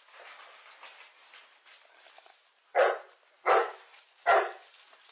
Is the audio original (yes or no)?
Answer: yes